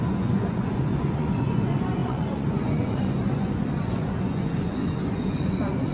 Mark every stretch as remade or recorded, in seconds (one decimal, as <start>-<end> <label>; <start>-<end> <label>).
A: 0.0-5.9 remade